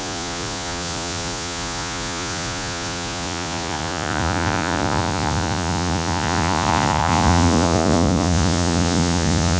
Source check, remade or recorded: remade